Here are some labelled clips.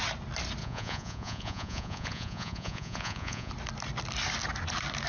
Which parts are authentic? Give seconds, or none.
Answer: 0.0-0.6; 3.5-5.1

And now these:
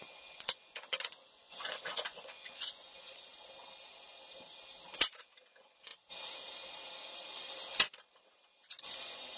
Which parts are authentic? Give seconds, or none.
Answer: 3.3-5.5; 5.9-8.8

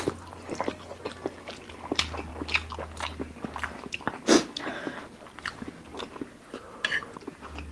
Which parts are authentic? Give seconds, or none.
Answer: 0.0-7.7

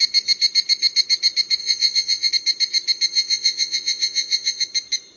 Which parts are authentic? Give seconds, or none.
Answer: 0.0-1.6; 2.3-3.1; 4.6-5.2

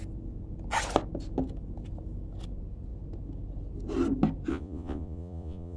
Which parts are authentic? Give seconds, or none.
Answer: 0.0-4.5

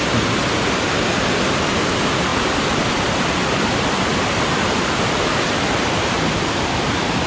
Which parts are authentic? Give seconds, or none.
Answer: 0.0-7.3